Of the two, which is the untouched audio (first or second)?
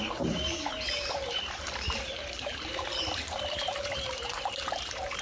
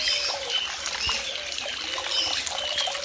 second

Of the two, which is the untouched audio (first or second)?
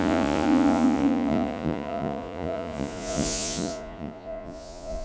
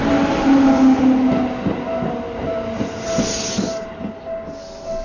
second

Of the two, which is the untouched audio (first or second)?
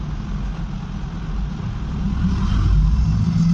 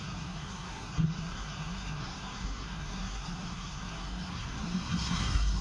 first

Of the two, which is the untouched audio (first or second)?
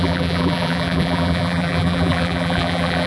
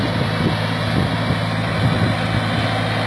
second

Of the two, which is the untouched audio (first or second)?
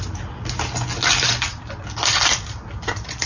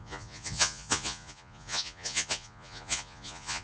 first